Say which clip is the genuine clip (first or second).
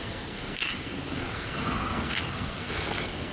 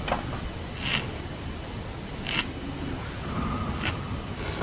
second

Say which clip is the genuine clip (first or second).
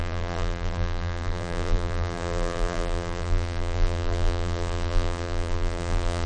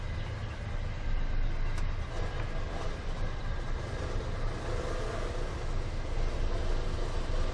second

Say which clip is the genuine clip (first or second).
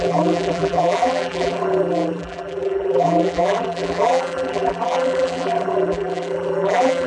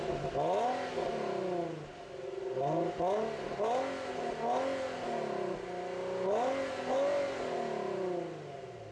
second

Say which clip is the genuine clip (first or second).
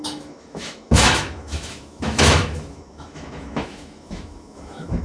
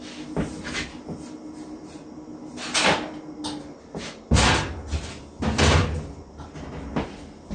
second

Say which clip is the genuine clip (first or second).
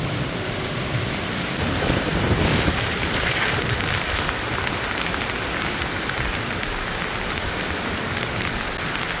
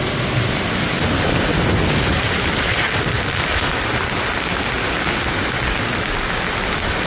second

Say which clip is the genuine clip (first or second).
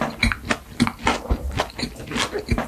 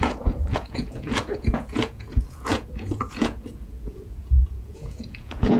first